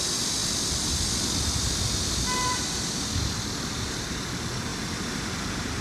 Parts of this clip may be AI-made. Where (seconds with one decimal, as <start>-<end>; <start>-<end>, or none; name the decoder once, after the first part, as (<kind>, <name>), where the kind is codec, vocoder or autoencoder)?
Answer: 4.7-5.8 (vocoder, BigVGAN v2)